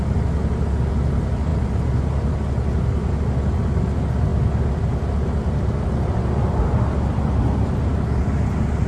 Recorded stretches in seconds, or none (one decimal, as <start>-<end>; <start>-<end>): 0.0-8.9